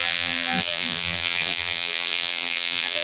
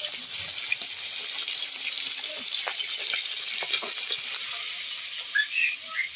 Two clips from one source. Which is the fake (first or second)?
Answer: first